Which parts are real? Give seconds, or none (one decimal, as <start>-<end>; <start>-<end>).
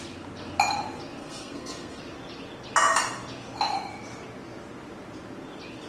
0.0-1.2; 2.0-5.9